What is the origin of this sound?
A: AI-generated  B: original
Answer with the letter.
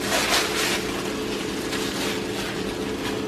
B